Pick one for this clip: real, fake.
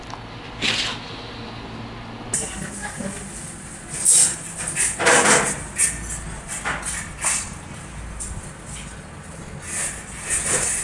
real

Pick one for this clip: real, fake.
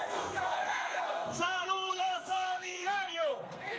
fake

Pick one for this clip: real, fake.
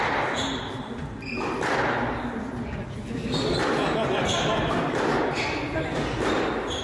real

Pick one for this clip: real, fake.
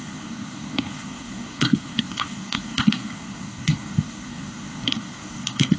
fake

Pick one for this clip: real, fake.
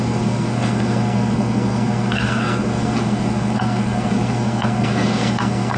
fake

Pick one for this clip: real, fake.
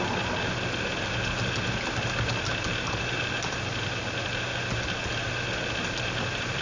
real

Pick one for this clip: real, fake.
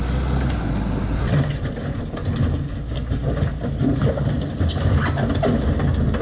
real